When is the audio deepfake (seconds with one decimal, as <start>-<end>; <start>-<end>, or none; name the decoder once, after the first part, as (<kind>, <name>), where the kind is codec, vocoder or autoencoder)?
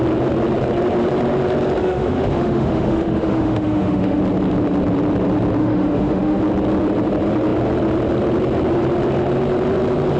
1.8-4.2 (autoencoder, DAC-VAE); 5.6-6.4